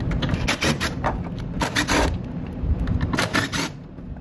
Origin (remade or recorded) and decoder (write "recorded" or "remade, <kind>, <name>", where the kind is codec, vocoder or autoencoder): recorded